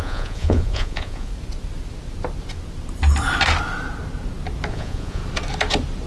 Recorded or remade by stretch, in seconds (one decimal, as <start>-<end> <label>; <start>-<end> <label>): 0.0-1.3 remade; 1.3-4.7 recorded; 4.7-5.2 remade; 5.2-6.1 recorded